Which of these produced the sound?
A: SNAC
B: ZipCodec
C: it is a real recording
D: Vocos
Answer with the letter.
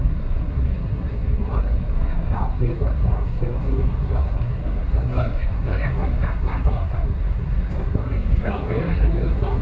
A